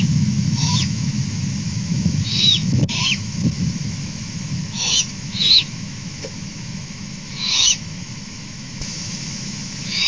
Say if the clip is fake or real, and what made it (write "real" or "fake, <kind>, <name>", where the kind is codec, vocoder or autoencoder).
fake, autoencoder, DAC-VAE